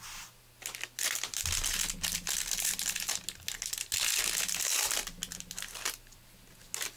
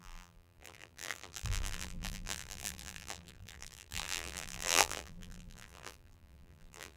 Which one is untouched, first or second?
first